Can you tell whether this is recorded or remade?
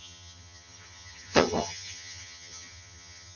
remade